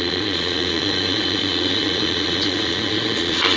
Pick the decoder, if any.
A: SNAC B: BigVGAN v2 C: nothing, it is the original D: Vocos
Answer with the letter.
D